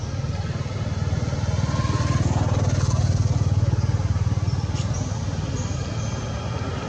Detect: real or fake real